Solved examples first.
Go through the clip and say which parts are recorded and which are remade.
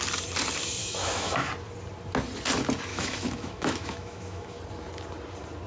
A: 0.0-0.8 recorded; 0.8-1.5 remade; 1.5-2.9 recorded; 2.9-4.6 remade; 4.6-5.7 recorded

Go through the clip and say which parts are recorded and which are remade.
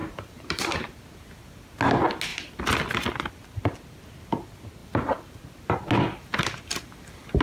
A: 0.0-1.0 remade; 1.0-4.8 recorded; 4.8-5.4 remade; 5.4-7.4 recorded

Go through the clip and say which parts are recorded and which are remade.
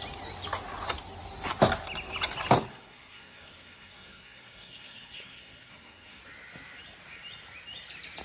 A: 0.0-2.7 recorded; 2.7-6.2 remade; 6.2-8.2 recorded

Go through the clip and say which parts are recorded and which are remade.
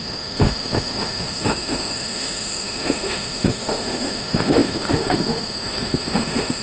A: 0.0-6.6 remade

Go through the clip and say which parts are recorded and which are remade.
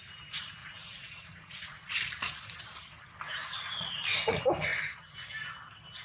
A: 0.0-0.6 recorded; 0.6-1.8 remade; 1.8-3.4 recorded; 3.4-4.0 remade; 4.0-6.0 recorded